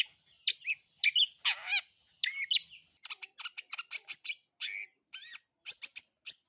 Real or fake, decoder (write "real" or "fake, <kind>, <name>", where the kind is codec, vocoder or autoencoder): real